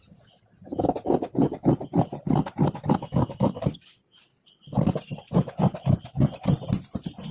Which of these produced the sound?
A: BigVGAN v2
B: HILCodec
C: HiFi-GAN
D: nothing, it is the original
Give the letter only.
D